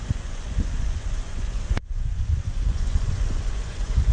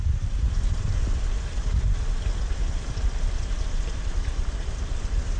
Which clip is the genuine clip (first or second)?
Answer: second